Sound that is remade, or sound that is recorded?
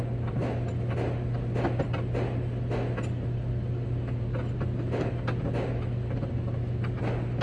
recorded